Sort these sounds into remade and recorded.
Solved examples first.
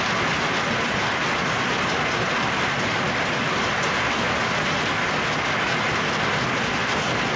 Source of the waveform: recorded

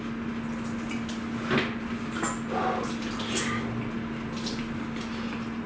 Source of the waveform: recorded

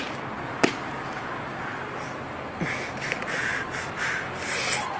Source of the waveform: recorded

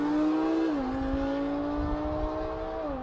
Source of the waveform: recorded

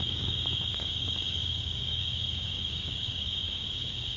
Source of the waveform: remade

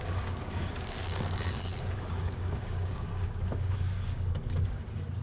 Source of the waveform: remade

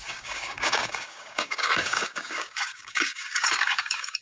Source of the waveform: remade